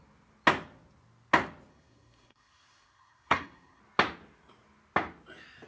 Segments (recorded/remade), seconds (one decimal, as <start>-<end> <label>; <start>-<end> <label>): 0.0-1.7 recorded; 1.7-3.8 remade; 3.8-5.7 recorded